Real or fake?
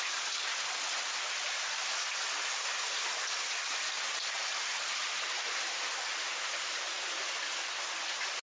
real